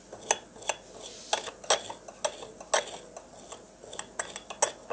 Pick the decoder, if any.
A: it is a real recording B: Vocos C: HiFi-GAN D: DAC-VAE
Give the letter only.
A